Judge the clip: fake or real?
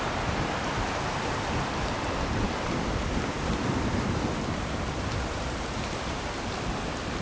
real